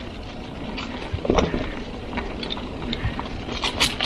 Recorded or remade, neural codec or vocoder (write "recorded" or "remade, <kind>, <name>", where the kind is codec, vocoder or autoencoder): recorded